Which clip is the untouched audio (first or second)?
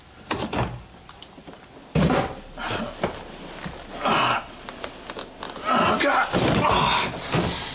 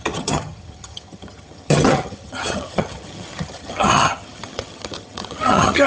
first